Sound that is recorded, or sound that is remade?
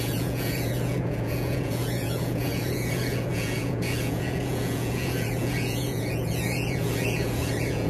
remade